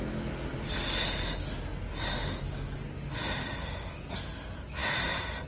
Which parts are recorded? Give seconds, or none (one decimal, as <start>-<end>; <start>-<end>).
0.0-5.5